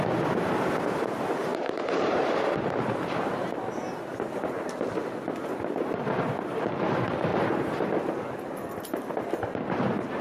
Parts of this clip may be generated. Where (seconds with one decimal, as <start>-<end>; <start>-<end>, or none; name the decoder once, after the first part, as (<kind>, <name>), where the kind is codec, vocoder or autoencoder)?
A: 1.5-2.6 (vocoder, BigVGAN v2); 7.3-7.8